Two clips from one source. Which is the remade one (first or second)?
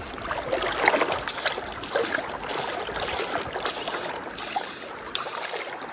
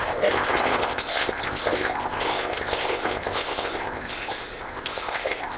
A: second